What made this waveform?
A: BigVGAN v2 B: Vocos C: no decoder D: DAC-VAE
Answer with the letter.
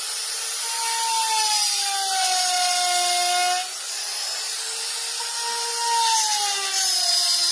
C